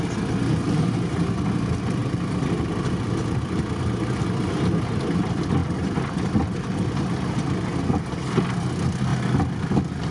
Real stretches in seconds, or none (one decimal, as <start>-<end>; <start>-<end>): 0.0-10.1